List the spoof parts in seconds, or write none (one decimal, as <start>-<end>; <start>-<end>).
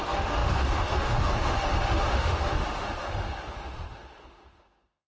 0.0-5.1